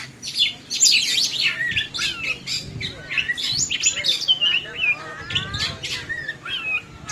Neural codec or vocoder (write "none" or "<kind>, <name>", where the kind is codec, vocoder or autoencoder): none